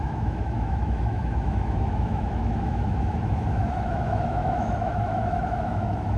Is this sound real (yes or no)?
no